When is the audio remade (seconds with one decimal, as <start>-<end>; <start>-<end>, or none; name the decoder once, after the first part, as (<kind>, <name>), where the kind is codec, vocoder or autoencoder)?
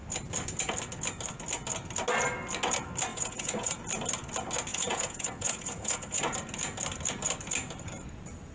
3.1-3.8 (vocoder, Vocos); 4.7-6.2